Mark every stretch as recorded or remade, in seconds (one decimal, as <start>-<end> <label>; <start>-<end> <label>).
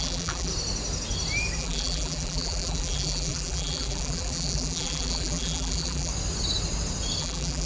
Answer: 0.0-0.5 remade; 0.5-1.6 recorded; 1.6-6.1 remade; 6.1-7.2 recorded; 7.2-7.7 remade